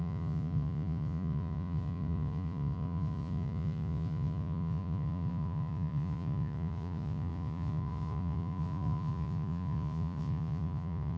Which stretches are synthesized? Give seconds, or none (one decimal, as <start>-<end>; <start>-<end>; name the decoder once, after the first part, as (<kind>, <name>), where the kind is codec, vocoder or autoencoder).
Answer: 0.0-11.2 (vocoder, Vocos)